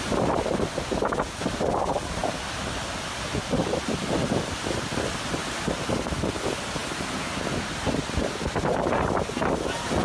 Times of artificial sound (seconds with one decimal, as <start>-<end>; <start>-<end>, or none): none